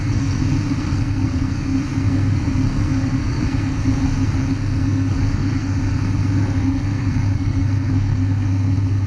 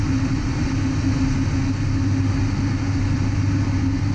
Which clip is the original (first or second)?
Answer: second